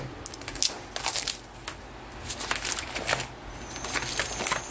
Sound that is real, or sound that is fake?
real